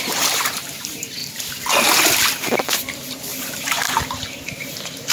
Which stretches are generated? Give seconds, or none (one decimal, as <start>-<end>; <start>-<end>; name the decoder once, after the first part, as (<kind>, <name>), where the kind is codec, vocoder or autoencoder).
0.0-1.2 (vocoder, BigVGAN v2); 2.6-5.1

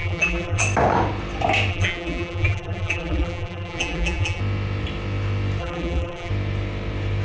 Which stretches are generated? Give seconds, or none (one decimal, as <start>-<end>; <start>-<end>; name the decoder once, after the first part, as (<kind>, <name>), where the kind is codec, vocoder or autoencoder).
0.0-0.6 (vocoder, BigVGAN v2); 1.7-4.4; 5.6-6.3